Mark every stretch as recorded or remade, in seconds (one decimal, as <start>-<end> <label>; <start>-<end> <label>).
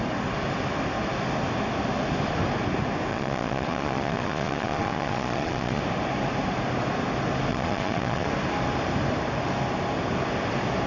0.0-3.1 recorded; 3.1-5.8 remade; 5.8-7.5 recorded; 7.5-8.3 remade; 8.3-10.9 recorded